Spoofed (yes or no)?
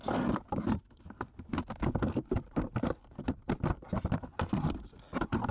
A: no